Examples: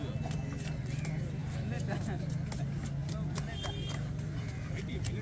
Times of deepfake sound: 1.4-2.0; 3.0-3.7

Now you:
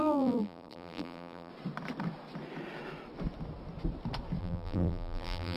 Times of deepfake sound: 0.0-1.5; 4.4-5.6

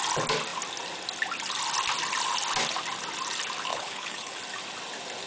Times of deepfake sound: 3.7-4.4

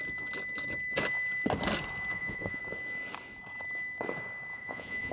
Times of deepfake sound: 2.1-2.6; 4.5-5.1

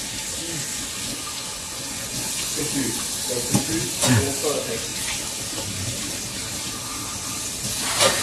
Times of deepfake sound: 0.7-3.0